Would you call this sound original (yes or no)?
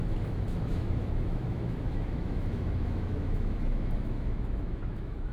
no